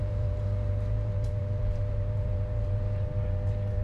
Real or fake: fake